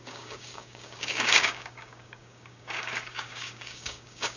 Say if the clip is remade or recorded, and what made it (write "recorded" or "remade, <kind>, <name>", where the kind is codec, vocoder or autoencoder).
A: remade, codec, DAC